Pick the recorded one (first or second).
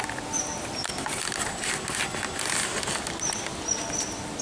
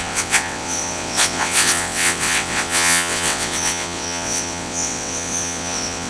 first